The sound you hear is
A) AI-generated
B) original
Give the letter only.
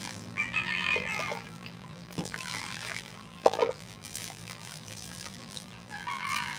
A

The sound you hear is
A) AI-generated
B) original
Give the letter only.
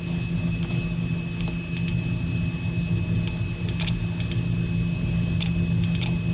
B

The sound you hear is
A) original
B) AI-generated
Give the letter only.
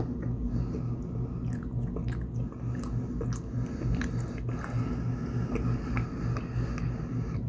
A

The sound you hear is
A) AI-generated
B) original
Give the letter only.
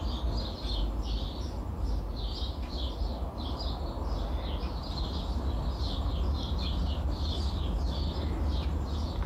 B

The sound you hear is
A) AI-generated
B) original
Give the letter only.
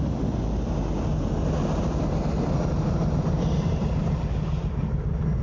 B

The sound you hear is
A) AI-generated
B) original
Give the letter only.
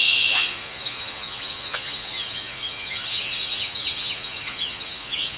A